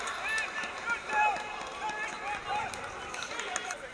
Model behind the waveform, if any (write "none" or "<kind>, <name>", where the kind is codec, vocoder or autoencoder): none